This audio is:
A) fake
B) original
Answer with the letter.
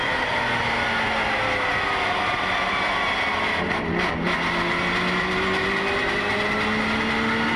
B